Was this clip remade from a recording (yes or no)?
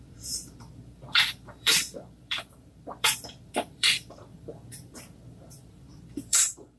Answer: yes